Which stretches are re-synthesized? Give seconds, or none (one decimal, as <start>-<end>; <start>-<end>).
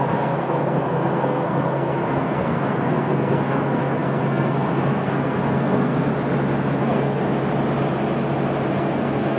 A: 0.0-6.1; 6.8-7.2; 8.7-9.4